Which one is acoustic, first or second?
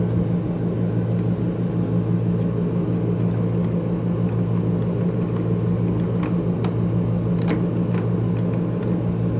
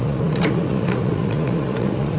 first